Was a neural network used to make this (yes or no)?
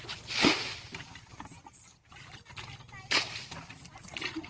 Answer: no